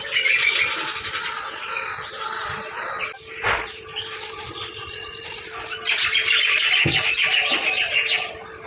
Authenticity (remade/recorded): recorded